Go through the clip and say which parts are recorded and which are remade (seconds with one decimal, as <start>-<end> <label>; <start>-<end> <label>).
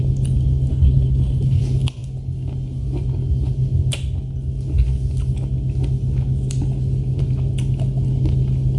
0.0-0.7 recorded; 0.7-1.6 remade; 1.6-8.8 recorded